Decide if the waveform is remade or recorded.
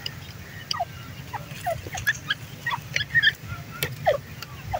recorded